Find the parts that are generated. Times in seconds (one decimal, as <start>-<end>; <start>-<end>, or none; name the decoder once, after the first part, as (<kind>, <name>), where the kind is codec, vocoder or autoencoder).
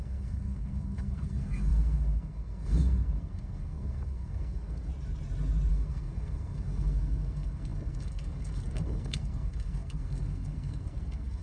0.0-4.9 (codec, SNAC); 5.7-11.4